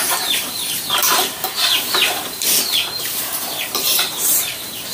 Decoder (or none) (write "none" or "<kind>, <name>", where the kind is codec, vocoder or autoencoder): vocoder, BigVGAN v2